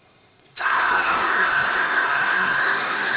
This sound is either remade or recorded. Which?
remade